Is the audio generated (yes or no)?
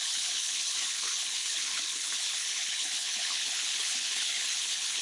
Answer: yes